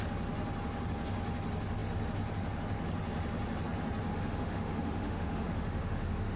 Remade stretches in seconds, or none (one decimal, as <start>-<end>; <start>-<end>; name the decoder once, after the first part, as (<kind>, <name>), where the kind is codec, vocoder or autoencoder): 4.1-6.4 (autoencoder, DAC-VAE)